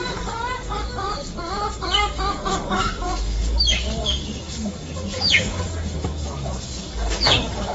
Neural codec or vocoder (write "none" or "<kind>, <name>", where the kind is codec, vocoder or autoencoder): codec, DAC